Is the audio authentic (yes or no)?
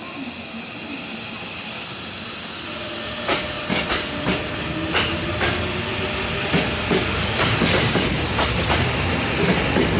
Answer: yes